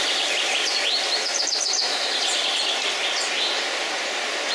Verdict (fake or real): fake